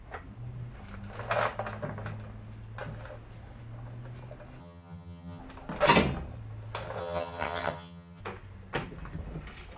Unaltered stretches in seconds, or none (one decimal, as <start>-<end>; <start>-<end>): 0.0-4.6; 5.4-7.0; 8.2-9.8